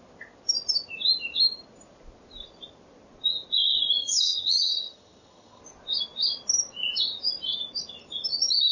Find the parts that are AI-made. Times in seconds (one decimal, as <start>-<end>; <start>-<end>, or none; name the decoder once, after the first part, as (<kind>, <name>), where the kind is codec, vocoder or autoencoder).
4.0-5.6 (vocoder, HiFi-GAN)